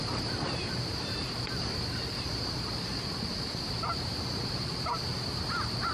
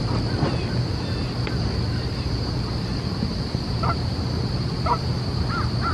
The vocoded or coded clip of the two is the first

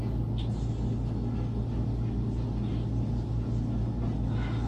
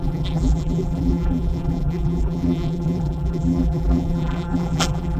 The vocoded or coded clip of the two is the second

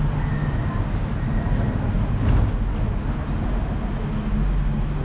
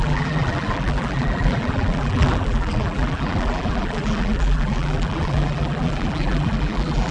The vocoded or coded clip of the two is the second